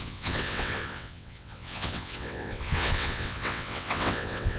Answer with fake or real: fake